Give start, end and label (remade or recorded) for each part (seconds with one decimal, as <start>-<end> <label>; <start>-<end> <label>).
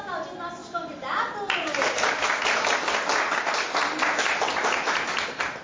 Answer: 0.0-5.6 recorded